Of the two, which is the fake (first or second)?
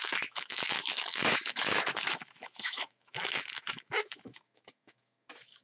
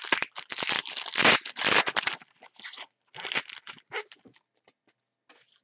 first